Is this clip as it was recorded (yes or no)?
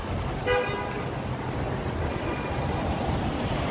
yes